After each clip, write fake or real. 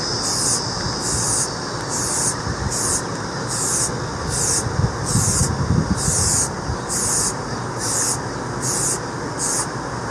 real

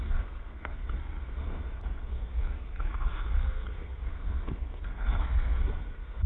fake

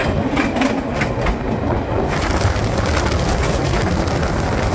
real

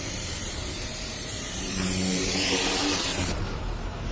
fake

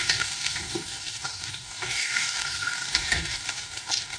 fake